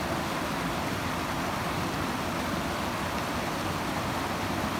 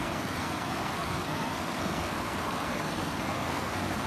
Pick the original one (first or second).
first